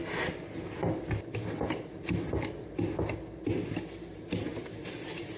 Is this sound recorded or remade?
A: recorded